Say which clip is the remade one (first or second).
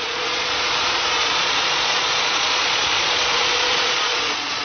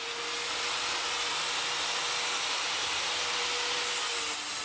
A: first